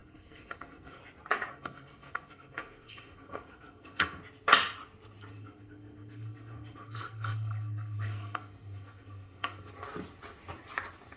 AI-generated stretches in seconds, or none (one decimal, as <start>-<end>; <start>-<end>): 0.0-1.0; 1.5-4.2; 5.3-9.7